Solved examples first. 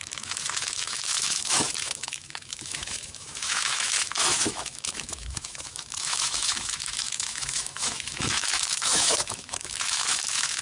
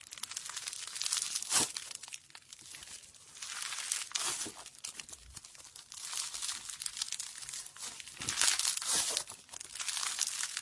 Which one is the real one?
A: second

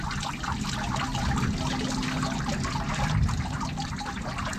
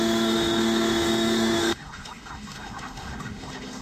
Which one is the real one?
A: first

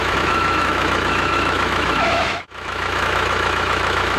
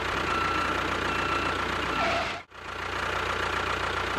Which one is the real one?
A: second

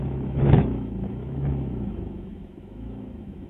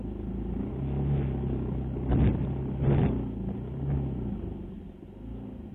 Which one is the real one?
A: second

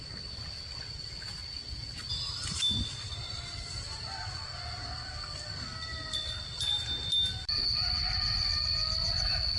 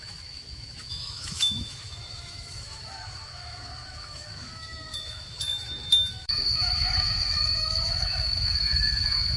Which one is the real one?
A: first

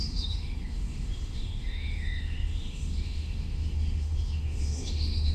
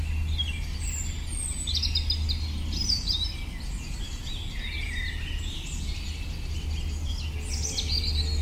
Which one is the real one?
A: second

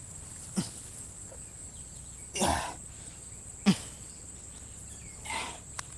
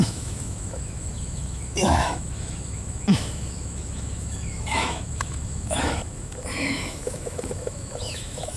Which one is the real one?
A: first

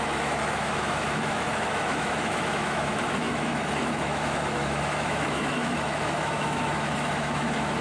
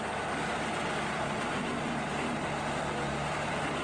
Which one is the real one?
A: second